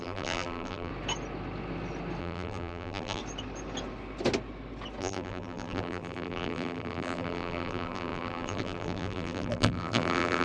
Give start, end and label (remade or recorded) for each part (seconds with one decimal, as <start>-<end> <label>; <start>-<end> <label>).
0.0-0.9 remade; 0.9-2.2 recorded; 2.2-3.2 remade; 3.2-5.0 recorded; 5.0-10.4 remade